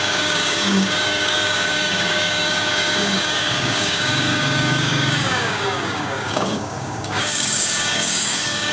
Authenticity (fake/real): fake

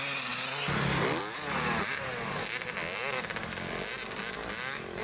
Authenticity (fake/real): real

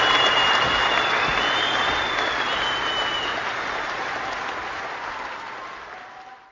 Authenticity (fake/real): real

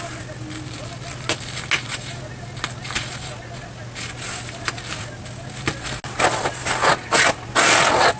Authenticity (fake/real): real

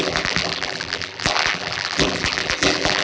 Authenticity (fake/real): fake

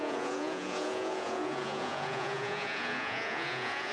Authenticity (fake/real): fake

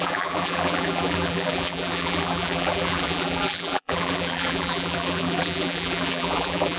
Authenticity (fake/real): fake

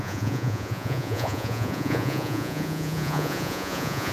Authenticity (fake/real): fake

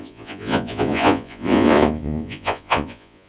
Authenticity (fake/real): fake